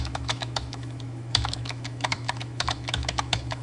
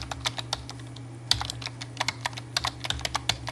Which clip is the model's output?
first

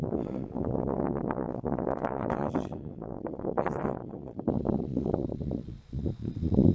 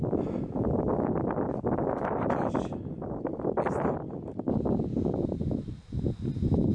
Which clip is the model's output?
first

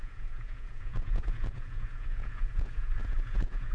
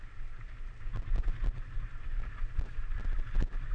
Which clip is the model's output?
first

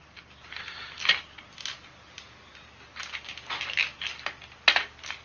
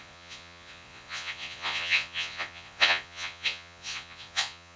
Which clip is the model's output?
second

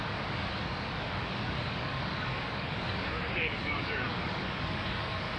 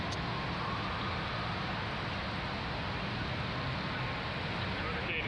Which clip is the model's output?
first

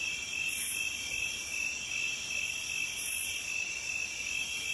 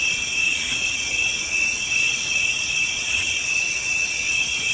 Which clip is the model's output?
second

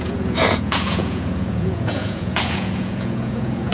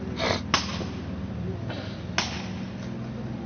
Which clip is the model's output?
first